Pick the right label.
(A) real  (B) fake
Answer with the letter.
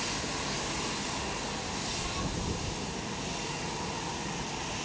A